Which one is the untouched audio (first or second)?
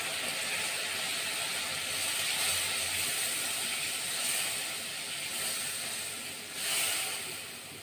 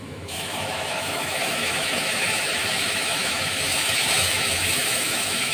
first